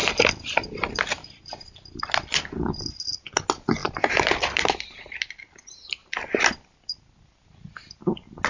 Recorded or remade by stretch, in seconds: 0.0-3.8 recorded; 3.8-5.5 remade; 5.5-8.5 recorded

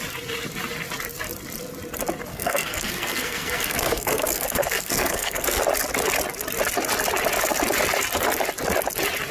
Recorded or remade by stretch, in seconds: 0.0-2.3 recorded; 2.3-5.6 remade; 5.6-9.3 recorded

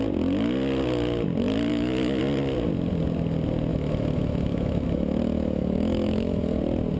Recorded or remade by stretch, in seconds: 0.0-1.7 recorded; 1.7-2.2 remade; 2.2-3.7 recorded; 3.7-6.6 remade; 6.6-7.0 recorded